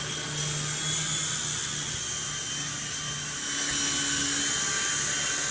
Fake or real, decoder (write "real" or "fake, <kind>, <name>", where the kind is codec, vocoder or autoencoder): real